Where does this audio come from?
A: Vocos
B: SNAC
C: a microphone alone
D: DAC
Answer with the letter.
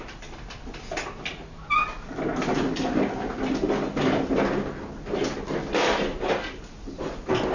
C